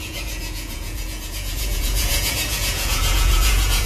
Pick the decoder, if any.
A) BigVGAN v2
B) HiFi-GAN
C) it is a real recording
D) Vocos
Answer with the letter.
D